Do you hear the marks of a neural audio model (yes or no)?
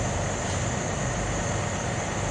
no